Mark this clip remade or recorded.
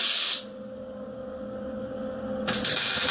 recorded